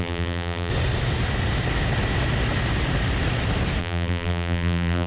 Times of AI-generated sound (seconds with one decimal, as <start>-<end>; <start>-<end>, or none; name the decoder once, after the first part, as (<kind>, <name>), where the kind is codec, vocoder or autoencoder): 0.0-0.7 (vocoder, BigVGAN v2); 3.8-5.1